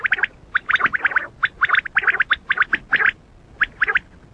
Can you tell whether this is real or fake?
real